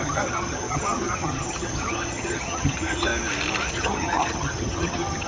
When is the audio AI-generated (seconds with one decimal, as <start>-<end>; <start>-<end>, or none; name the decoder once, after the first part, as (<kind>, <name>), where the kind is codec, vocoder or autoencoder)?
0.0-3.1 (vocoder, HiFi-GAN); 3.7-5.3